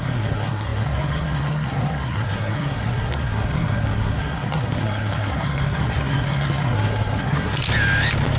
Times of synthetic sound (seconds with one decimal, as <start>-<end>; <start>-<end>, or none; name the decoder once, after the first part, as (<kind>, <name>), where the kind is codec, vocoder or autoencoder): 0.0-7.6 (codec, SNAC)